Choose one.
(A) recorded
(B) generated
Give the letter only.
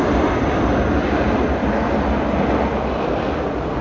A